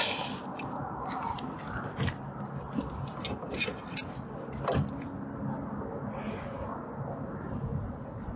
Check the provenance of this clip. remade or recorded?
recorded